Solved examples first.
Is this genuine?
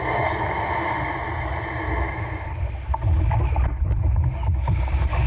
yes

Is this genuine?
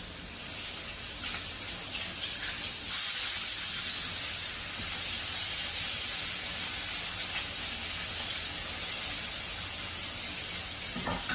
yes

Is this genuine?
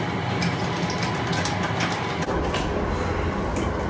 yes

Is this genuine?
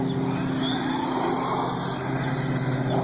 yes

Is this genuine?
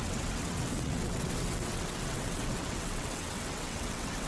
no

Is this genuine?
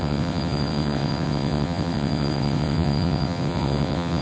no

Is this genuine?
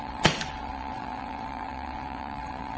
no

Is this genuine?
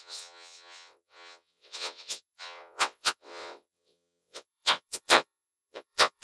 no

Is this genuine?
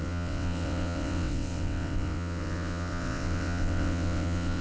no